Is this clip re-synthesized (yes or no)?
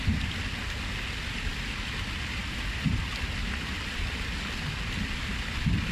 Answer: no